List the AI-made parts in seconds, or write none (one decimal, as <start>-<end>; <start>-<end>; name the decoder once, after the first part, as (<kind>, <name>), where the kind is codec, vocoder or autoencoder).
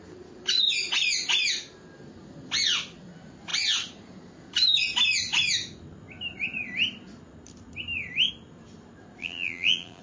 9.2-10.0 (vocoder, BigVGAN v2)